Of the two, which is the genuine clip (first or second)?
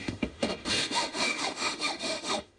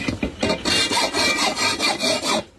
second